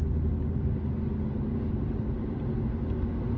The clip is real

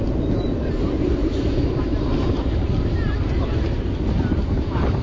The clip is fake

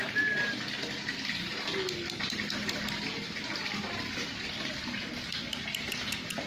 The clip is real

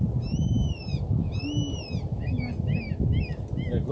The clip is real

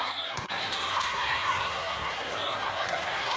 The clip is fake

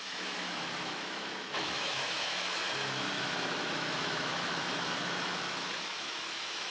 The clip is fake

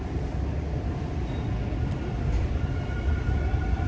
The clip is real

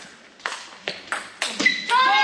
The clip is real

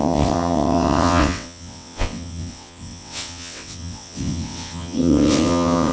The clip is fake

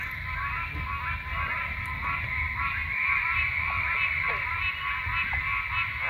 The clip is real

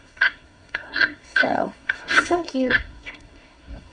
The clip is fake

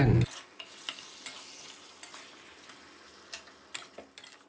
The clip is real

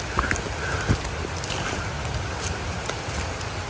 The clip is real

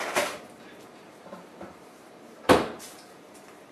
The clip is fake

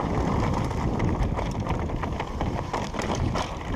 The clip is fake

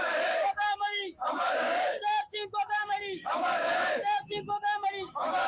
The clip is fake